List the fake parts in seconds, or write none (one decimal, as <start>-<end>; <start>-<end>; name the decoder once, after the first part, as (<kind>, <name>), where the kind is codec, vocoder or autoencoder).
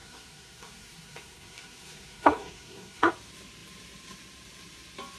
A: 0.0-3.1 (codec, SNAC)